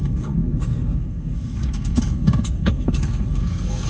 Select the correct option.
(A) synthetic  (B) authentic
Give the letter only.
A